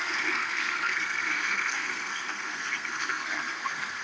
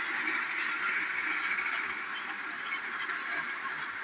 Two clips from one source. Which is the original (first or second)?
second